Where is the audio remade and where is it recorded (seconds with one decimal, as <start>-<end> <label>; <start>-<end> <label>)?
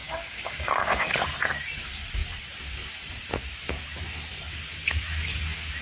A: 0.0-1.0 remade; 1.0-5.8 recorded